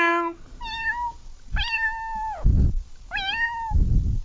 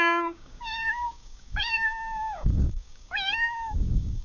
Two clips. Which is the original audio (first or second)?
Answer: first